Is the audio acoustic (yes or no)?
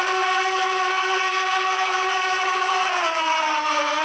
no